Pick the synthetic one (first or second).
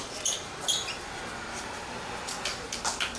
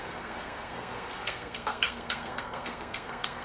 second